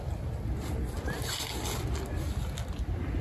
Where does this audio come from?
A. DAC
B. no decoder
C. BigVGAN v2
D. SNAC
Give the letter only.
B